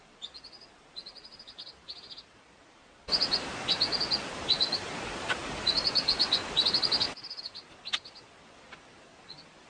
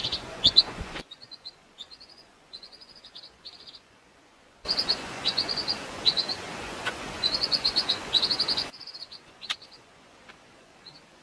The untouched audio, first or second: first